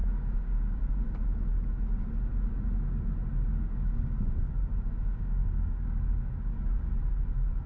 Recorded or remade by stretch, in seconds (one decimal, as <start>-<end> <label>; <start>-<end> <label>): 0.0-0.8 remade; 0.8-3.5 recorded; 3.5-4.1 remade; 4.1-4.7 recorded; 4.7-6.9 remade; 6.9-7.7 recorded

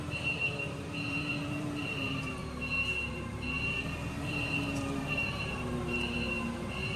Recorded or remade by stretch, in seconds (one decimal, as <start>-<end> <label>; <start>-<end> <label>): 0.0-2.4 remade; 2.4-3.1 recorded; 3.1-7.0 remade

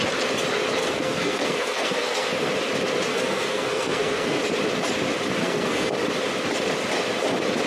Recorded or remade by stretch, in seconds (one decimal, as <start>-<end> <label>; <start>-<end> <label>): 0.0-0.8 recorded; 0.8-2.5 remade; 2.5-3.1 recorded; 3.1-4.4 remade; 4.4-5.4 recorded; 5.4-5.9 remade; 5.9-7.7 recorded